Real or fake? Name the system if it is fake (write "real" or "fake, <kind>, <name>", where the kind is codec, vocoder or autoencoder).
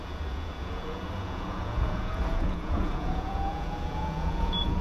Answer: fake, vocoder, Vocos